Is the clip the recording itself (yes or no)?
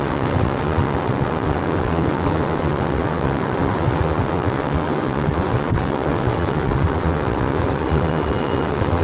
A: no